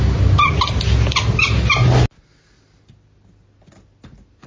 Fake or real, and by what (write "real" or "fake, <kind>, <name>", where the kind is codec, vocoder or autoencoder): real